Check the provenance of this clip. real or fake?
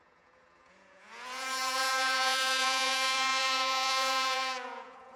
fake